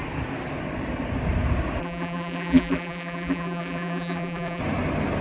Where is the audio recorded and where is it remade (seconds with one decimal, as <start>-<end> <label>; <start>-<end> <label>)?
0.0-1.8 recorded; 1.8-4.6 remade; 4.6-5.2 recorded